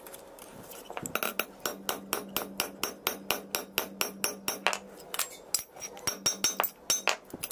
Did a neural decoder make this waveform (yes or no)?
no